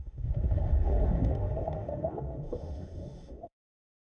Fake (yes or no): yes